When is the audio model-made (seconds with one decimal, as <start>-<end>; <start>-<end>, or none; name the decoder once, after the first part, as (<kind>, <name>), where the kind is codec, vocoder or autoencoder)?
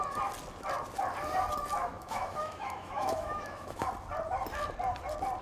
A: 1.8-3.9 (autoencoder, DAC-VAE)